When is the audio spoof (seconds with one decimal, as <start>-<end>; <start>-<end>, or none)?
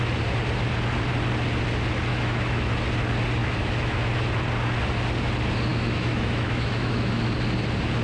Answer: 2.1-2.7; 3.4-4.1; 5.7-7.2